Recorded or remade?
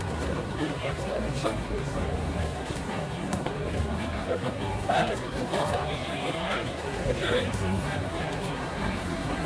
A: remade